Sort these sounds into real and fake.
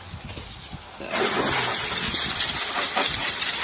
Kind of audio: real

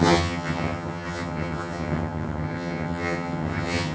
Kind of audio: fake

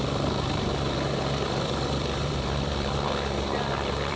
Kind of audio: fake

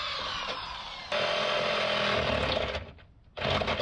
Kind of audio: real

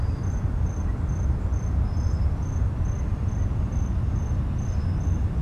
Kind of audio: real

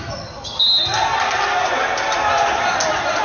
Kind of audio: real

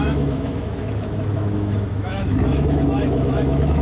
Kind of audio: fake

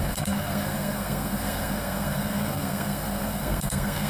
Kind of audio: fake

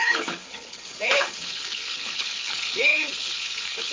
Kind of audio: fake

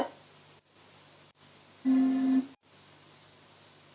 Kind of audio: real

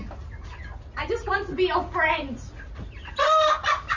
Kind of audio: real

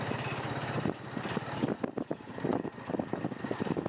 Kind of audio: real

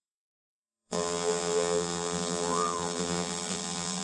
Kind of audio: fake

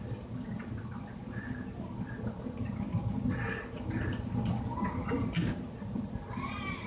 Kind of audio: real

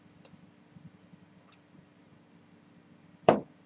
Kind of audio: fake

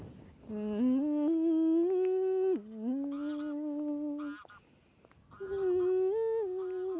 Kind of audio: real